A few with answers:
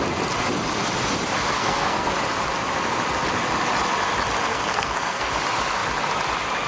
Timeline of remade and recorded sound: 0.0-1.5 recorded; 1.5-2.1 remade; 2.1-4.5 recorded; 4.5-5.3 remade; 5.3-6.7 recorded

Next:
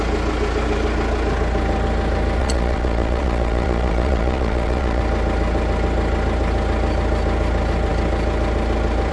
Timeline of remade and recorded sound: 0.0-2.4 recorded; 2.4-5.0 remade; 5.0-9.1 recorded

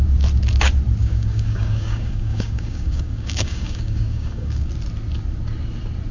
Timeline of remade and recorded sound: 0.0-1.0 recorded; 1.0-4.7 remade; 4.7-6.1 recorded

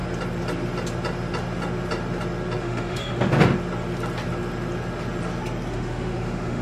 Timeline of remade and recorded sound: 0.0-2.6 recorded; 2.6-3.3 remade; 3.3-5.7 recorded; 5.7-6.6 remade